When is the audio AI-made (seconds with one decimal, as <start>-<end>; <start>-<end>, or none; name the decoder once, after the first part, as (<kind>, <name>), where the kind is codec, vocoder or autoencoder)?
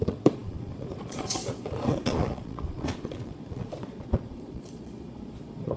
0.0-5.8 (vocoder, Vocos)